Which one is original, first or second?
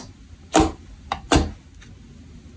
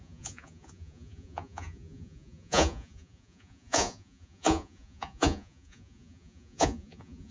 first